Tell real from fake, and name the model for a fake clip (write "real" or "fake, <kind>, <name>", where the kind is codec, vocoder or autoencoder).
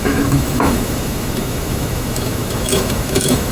fake, autoencoder, DAC-VAE